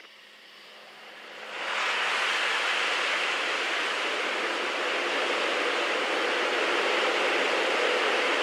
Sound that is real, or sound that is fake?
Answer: real